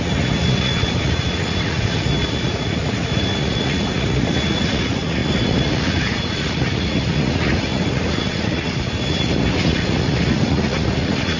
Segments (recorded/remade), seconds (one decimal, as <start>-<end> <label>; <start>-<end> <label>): 0.0-11.4 remade